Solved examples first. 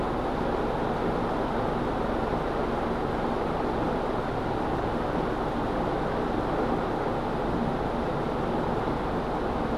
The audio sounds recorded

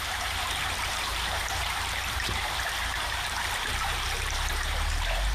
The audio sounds remade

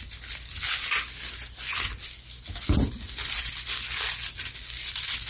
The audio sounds recorded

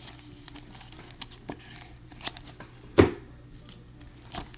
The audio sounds recorded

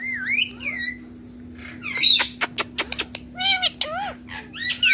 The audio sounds recorded